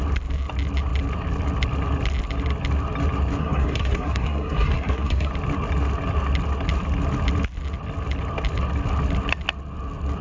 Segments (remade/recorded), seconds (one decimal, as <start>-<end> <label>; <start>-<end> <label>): 0.0-3.4 recorded; 3.4-5.3 remade; 5.3-10.2 recorded